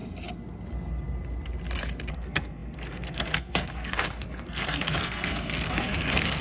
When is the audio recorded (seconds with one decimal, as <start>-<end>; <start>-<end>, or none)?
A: 0.0-2.1